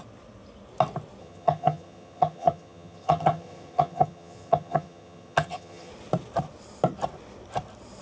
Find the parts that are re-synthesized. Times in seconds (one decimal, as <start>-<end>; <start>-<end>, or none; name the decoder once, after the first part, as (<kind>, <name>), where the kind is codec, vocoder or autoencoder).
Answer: 1.2-5.9 (vocoder, HiFi-GAN)